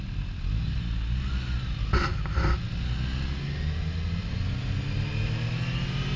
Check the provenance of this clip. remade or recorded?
recorded